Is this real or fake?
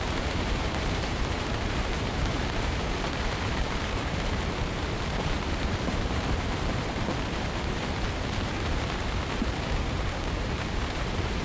fake